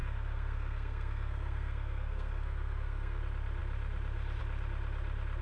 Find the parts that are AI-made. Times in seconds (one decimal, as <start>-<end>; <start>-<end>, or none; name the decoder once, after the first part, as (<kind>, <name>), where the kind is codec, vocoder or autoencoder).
0.0-3.2 (codec, SNAC)